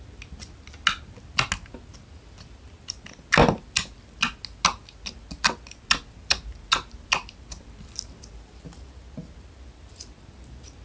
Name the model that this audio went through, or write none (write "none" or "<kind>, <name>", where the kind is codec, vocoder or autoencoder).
none